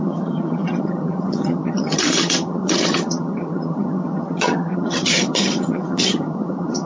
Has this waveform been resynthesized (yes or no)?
yes